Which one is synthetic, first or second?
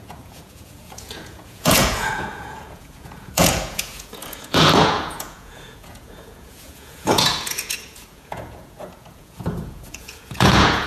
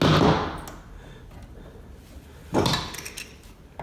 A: first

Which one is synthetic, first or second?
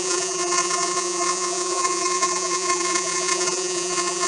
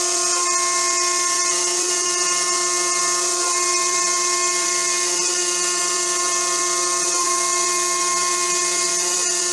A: first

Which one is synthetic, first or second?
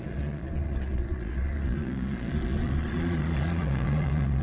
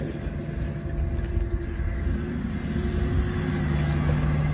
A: first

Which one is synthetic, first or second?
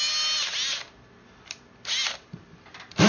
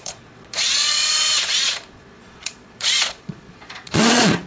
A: second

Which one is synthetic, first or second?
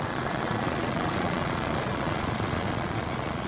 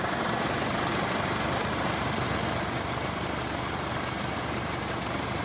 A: first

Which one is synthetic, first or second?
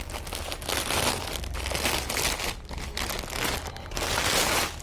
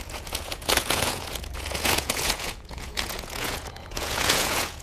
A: second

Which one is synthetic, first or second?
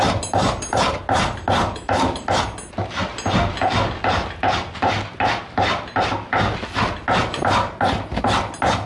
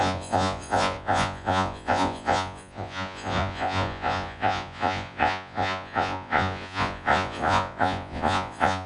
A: second